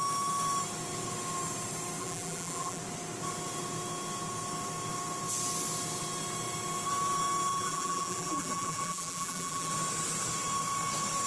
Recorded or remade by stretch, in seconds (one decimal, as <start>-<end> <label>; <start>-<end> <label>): 0.0-2.0 recorded; 2.0-2.8 remade; 2.8-7.5 recorded; 7.5-9.7 remade; 9.7-11.3 recorded